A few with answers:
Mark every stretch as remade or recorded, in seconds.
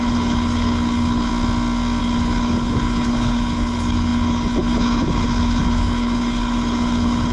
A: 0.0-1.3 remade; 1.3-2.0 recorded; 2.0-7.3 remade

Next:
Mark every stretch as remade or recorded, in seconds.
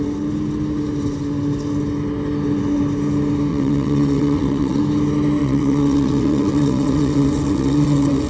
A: 0.0-3.5 recorded; 3.5-4.8 remade; 4.8-5.4 recorded; 5.4-8.3 remade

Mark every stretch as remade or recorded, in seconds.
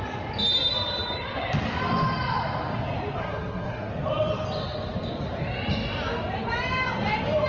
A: 0.0-3.2 recorded; 3.2-3.9 remade; 3.9-7.5 recorded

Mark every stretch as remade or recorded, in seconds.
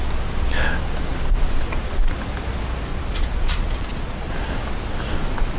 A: 0.0-2.9 recorded; 2.9-4.3 remade; 4.3-5.6 recorded